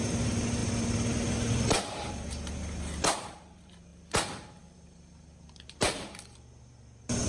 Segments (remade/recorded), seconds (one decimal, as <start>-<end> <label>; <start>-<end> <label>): 0.0-7.3 remade

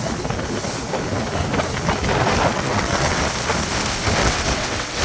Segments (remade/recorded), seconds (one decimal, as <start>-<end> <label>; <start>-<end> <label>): 0.0-2.5 recorded; 2.5-3.2 remade; 3.2-4.2 recorded; 4.2-5.0 remade

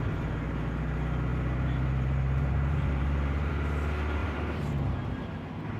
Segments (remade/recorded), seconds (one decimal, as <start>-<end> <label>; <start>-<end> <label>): 0.0-1.3 recorded; 1.3-3.5 remade; 3.5-4.2 recorded; 4.2-4.9 remade; 4.9-5.8 recorded

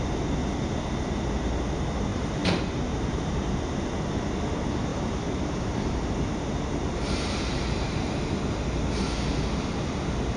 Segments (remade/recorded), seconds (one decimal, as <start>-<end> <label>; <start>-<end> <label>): 0.0-2.1 recorded; 2.1-3.5 remade; 3.5-4.9 recorded; 4.9-8.1 remade; 8.1-10.4 recorded

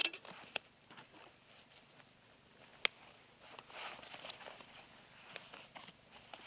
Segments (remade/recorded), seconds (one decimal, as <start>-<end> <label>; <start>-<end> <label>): 0.0-2.0 remade; 2.0-6.5 recorded